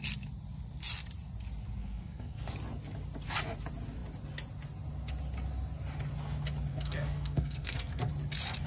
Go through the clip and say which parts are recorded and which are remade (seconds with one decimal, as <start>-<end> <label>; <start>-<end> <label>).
0.0-1.8 recorded; 1.8-2.5 remade; 2.5-6.7 recorded; 6.7-8.1 remade; 8.1-8.7 recorded